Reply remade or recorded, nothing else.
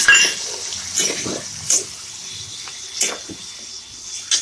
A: recorded